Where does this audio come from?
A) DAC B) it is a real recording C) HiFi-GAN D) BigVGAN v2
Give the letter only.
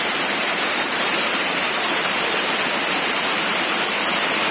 D